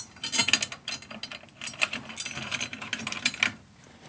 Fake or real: real